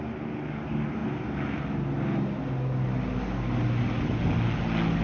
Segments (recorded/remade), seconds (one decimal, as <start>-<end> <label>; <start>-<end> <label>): 0.0-5.0 recorded